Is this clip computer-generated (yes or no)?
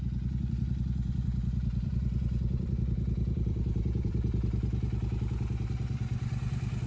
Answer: yes